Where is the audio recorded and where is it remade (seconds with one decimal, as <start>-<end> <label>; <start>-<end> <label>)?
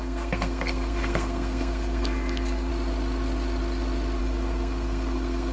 0.0-2.7 remade; 2.7-4.2 recorded; 4.2-5.5 remade